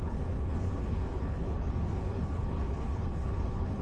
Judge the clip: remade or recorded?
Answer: remade